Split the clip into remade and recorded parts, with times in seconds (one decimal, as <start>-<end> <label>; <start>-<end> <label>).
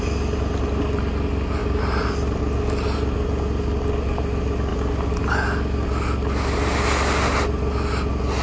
0.0-1.6 recorded; 1.6-2.4 remade; 2.4-8.4 recorded